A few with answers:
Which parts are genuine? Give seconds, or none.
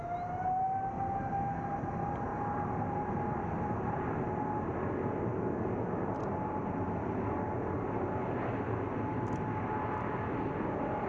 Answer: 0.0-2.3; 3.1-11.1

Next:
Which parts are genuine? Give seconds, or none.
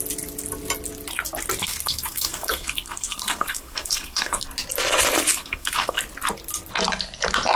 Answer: 0.0-1.6; 4.4-5.3; 6.0-7.6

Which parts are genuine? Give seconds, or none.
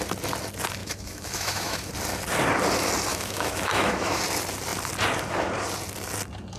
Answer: 0.0-0.8; 1.9-3.1; 4.2-6.6